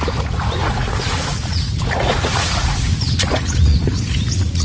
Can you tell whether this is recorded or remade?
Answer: remade